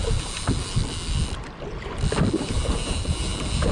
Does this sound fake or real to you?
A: real